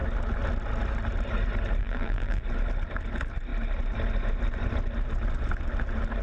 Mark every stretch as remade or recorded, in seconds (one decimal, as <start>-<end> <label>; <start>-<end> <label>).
0.0-1.8 recorded; 1.8-2.4 remade; 2.4-6.2 recorded